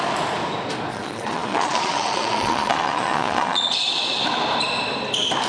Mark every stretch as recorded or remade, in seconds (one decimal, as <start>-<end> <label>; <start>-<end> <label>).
0.0-0.9 recorded; 0.9-4.2 remade; 4.2-5.5 recorded